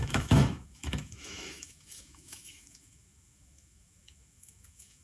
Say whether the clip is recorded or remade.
remade